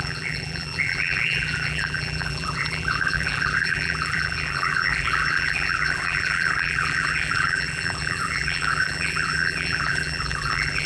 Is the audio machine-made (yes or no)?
yes